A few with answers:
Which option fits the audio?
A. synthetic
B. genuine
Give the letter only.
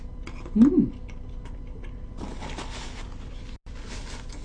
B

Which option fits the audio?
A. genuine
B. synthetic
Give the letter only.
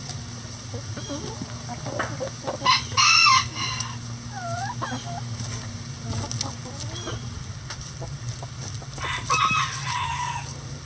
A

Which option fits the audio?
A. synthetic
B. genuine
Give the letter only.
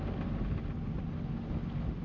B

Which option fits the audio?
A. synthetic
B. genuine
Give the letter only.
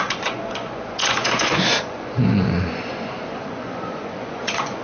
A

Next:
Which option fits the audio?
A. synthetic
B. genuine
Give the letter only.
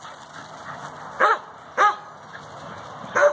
B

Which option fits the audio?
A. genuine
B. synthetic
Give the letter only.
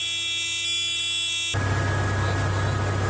A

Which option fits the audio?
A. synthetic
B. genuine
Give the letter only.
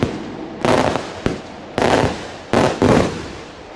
B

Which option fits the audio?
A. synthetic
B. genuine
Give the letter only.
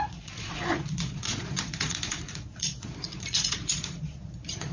A